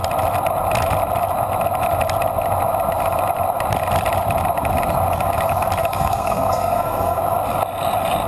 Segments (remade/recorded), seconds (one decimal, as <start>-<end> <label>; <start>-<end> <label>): 0.0-5.8 recorded; 5.8-7.2 remade; 7.2-8.3 recorded